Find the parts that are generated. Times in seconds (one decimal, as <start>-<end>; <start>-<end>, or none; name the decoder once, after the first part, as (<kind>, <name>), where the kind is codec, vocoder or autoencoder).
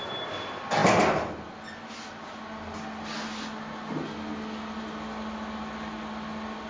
none